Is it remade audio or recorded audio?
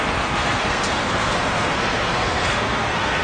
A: remade